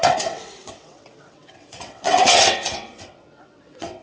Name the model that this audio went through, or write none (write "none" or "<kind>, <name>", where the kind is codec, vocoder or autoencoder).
vocoder, WaveNeXt